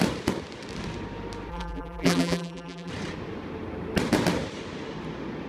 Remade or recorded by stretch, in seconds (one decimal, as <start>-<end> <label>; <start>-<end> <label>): 0.0-1.5 recorded; 1.5-2.9 remade; 2.9-5.5 recorded